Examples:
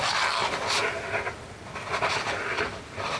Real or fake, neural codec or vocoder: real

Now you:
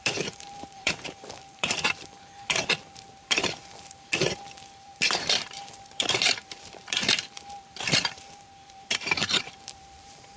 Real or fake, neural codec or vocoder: fake, vocoder, BigVGAN v2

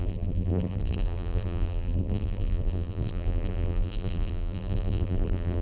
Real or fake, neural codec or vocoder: fake, vocoder, BigVGAN v2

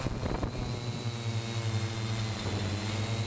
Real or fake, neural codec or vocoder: real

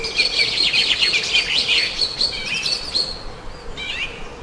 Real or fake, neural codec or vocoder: real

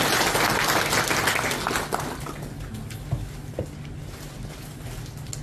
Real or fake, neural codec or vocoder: real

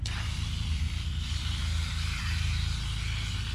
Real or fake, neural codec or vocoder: real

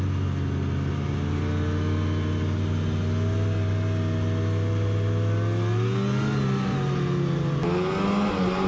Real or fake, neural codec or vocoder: real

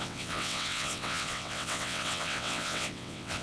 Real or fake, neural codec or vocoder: fake, vocoder, WaveNeXt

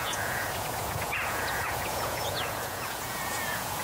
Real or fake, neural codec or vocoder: fake, vocoder, Vocos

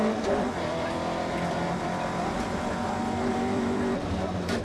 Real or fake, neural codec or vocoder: fake, vocoder, BigVGAN v2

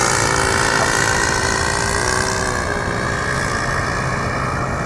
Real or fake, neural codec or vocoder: real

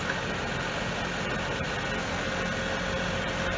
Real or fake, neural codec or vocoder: real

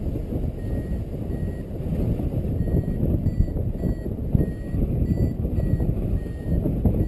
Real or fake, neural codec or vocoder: real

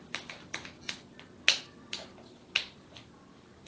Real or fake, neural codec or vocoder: real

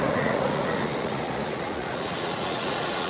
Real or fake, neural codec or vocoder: fake, vocoder, Vocos